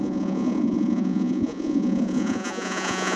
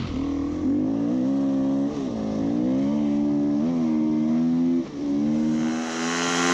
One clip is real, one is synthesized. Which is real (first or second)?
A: second